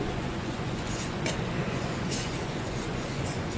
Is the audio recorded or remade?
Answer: remade